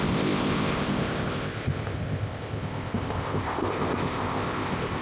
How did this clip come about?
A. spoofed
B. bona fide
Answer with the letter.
A